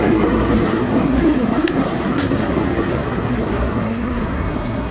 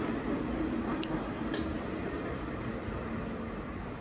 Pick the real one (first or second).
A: second